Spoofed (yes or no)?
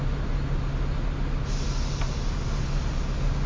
no